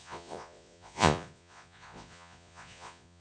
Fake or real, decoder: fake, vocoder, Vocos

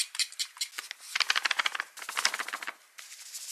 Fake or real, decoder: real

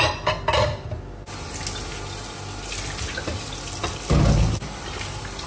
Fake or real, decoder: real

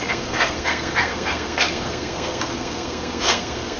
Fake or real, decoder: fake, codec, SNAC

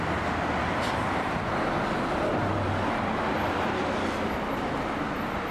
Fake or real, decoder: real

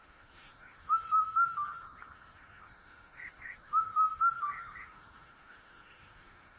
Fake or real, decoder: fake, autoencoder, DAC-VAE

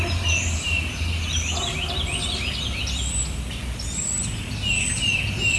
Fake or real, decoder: real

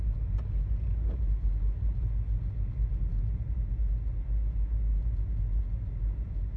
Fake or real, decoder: real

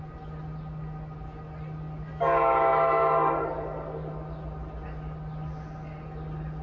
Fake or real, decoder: real